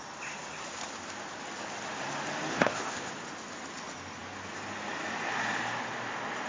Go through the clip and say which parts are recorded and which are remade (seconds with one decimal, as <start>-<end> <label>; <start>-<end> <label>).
0.0-2.5 recorded; 2.5-3.1 remade; 3.1-6.5 recorded